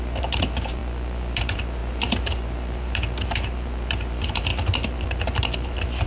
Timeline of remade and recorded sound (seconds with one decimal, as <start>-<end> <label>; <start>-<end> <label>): 0.0-0.8 remade; 0.8-1.4 recorded; 1.4-6.1 remade